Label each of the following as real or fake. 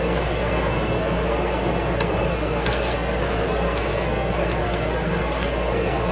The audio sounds fake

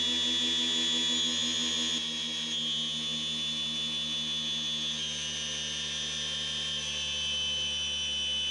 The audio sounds real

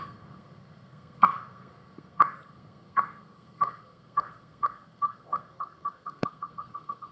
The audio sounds fake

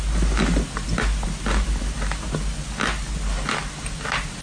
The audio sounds real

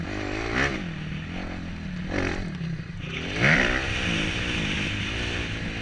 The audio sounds real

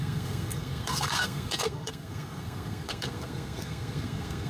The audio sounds fake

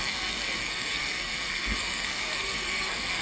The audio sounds fake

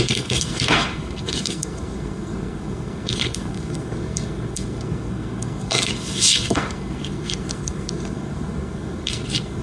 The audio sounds fake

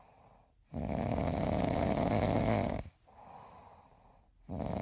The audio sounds real